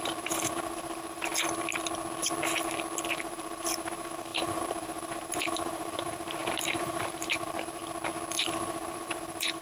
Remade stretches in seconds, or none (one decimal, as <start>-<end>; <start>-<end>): 0.0-1.3; 3.1-7.8; 8.4-9.6